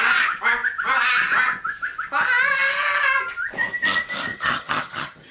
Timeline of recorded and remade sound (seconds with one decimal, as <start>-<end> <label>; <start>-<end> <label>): 0.0-4.3 recorded; 4.3-5.3 remade